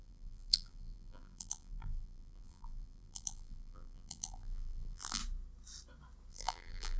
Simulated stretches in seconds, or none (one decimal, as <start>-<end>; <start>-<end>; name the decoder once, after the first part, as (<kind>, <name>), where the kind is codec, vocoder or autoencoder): 0.0-5.2 (vocoder, BigVGAN v2); 6.3-7.0